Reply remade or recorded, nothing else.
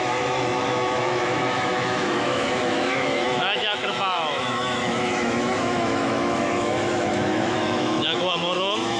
remade